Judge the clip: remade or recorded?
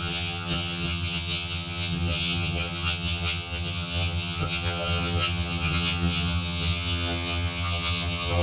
remade